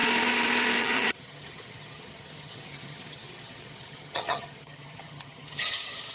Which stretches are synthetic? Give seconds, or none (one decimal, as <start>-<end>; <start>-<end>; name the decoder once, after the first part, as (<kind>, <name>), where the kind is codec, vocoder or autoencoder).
0.8-6.1 (vocoder, HiFi-GAN)